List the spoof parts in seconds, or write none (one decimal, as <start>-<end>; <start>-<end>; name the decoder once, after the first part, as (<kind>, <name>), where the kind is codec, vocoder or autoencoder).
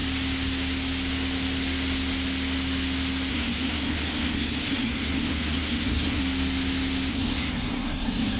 3.3-6.2 (codec, SNAC); 7.1-8.4